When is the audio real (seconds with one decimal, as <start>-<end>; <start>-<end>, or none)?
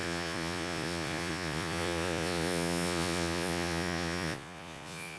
none